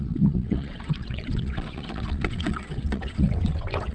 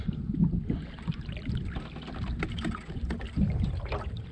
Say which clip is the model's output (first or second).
first